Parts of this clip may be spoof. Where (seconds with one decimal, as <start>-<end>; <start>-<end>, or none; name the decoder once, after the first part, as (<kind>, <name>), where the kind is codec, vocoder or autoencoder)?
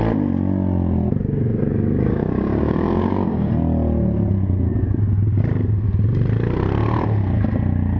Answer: 1.2-3.5 (codec, DAC)